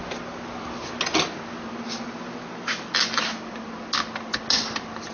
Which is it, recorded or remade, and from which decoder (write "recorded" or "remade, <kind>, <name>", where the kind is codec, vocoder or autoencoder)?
recorded